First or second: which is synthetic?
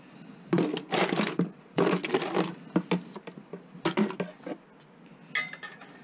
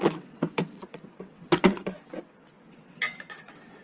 second